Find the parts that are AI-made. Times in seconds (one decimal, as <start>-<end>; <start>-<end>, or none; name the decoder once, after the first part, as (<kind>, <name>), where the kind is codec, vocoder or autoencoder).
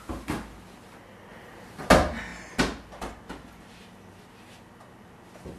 1.3-1.9 (vocoder, BigVGAN v2)